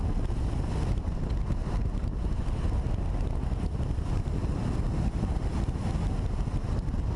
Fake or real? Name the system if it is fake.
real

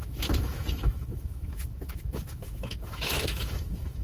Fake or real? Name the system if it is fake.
fake, autoencoder, DAC-VAE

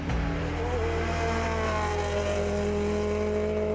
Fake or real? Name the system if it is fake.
real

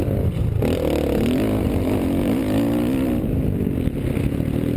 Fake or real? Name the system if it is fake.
real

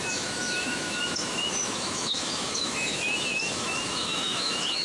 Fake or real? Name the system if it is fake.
fake, autoencoder, DAC-VAE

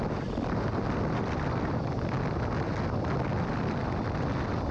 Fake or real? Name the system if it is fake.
real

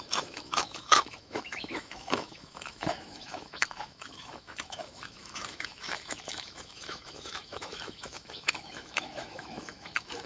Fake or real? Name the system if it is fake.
fake, autoencoder, DAC-VAE